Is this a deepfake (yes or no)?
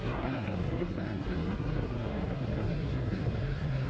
yes